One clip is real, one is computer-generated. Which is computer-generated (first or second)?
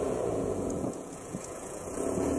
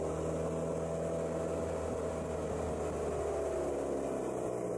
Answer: first